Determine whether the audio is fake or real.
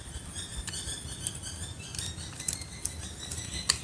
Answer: real